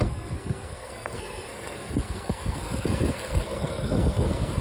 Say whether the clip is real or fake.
fake